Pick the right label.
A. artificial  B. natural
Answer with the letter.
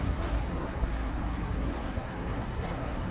A